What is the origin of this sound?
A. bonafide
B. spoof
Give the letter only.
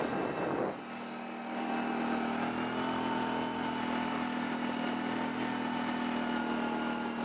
A